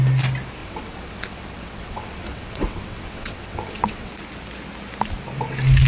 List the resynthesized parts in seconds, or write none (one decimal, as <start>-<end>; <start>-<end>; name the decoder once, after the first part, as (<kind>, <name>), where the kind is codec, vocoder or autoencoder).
0.6-4.1 (vocoder, WaveNeXt)